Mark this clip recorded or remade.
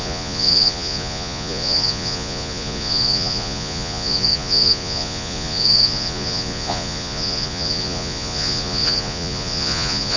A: remade